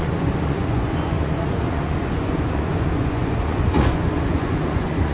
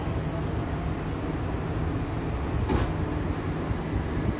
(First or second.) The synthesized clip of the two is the first